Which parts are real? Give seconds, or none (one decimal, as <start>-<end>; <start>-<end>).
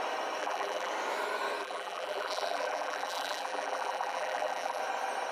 0.0-0.4; 0.9-1.6; 4.8-5.3